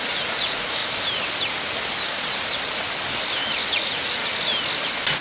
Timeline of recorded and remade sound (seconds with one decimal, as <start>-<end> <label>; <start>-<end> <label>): 0.0-0.8 remade; 0.8-3.7 recorded; 3.7-4.2 remade; 4.2-5.2 recorded